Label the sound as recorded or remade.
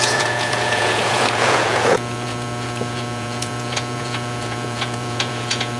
remade